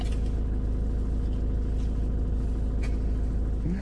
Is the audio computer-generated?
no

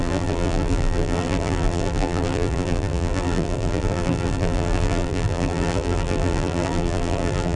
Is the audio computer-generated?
yes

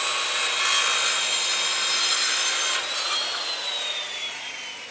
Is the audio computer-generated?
no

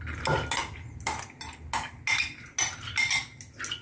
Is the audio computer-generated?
no